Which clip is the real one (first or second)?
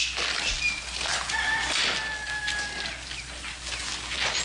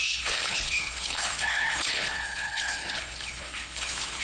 first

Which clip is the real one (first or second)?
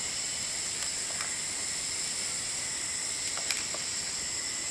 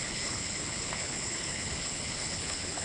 first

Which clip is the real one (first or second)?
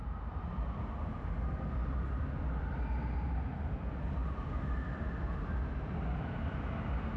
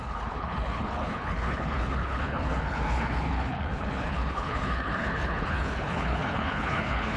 first